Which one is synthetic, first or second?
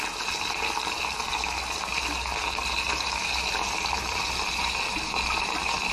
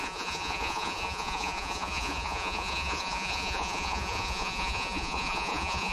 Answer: second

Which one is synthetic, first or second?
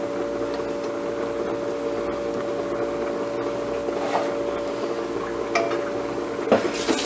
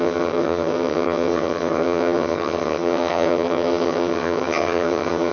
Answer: second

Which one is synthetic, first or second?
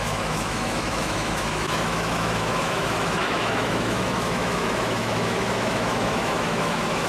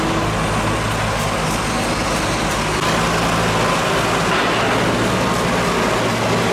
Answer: first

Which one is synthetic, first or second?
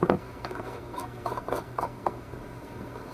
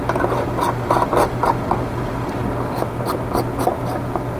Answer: first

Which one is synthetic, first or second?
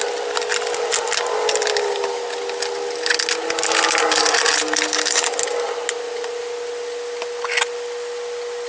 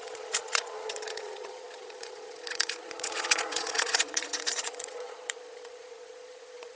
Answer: second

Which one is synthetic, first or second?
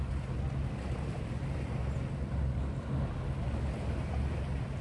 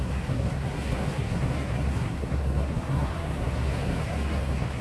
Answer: second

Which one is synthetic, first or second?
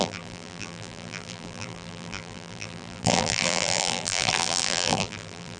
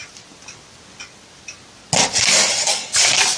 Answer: first